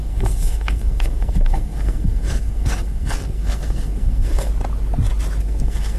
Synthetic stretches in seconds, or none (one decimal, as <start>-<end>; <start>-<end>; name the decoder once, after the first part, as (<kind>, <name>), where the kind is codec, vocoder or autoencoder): 0.0-4.5 (codec, SNAC); 5.4-6.0